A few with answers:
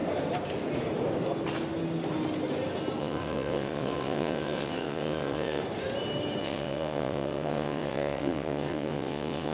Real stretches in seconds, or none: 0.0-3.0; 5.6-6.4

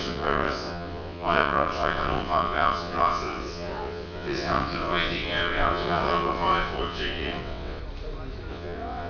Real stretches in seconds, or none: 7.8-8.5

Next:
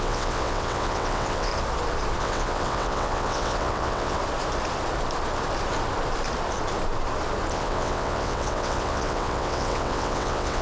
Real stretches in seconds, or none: 1.5-2.2; 4.2-7.5

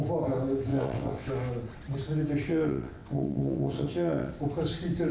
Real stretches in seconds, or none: 0.0-0.7; 1.3-2.5; 4.3-5.1

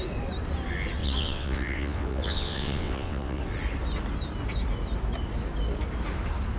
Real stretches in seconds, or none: 0.0-1.0; 3.4-6.6